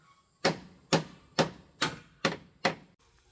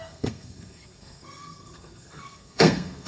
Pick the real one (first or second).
first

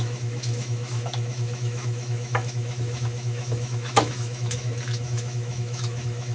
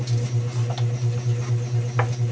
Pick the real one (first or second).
second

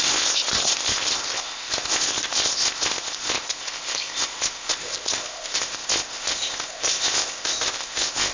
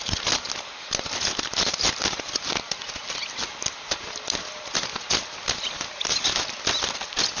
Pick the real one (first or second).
second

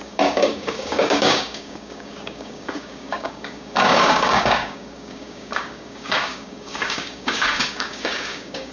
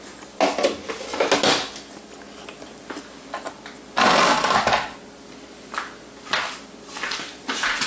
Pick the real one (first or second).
second